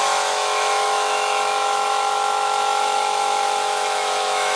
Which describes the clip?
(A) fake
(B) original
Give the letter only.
A